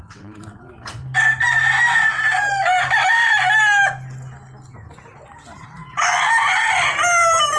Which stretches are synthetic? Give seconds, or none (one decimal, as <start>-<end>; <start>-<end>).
0.0-1.0; 5.6-6.1